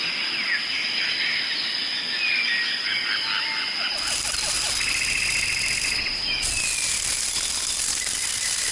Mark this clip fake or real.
real